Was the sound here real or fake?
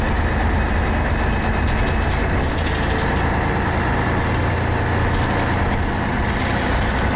real